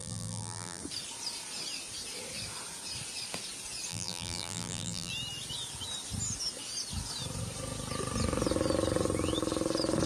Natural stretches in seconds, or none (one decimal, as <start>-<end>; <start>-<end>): 0.8-3.9; 5.1-10.1